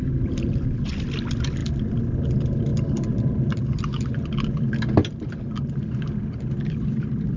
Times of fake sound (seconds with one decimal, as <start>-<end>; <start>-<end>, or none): none